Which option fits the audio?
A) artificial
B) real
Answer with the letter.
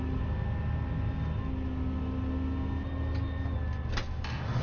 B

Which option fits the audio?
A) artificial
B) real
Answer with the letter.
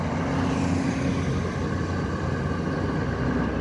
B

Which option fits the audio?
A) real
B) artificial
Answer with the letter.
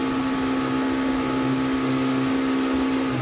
A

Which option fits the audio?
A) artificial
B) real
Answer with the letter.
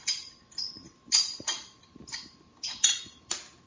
B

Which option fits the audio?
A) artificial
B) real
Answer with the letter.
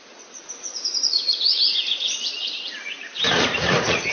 A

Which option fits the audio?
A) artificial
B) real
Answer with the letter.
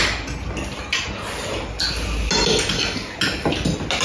B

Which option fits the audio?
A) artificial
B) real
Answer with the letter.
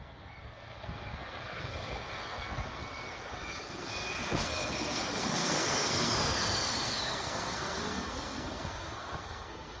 A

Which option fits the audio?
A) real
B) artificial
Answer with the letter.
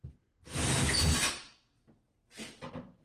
A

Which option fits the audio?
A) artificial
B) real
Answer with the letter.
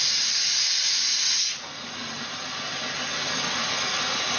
B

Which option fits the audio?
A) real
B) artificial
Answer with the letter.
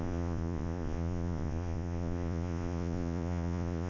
B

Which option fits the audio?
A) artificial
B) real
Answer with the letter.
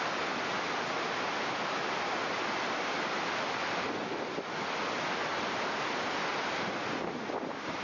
B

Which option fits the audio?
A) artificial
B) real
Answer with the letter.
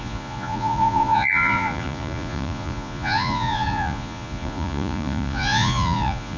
A